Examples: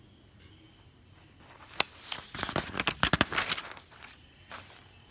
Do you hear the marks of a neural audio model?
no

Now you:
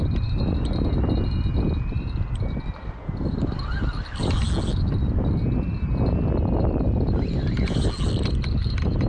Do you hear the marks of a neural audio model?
no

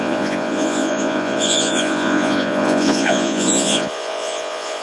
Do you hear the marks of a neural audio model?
yes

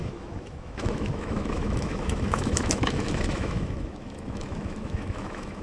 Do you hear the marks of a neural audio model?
yes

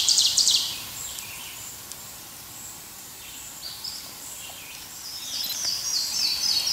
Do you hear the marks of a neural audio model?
yes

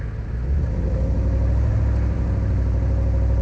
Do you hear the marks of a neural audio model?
no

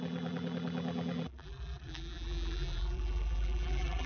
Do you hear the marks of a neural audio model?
yes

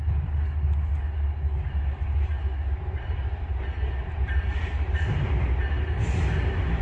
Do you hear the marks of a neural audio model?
no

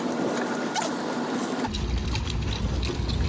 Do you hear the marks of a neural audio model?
no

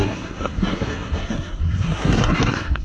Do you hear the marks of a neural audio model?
yes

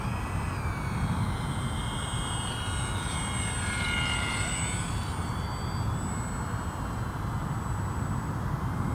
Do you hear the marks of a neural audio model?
no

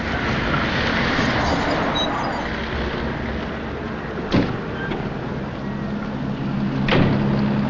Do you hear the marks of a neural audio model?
no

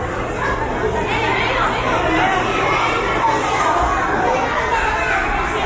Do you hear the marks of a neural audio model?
no